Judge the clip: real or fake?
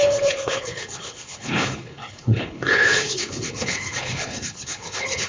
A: fake